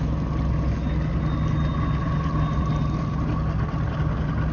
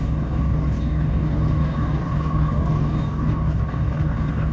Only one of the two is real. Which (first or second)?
first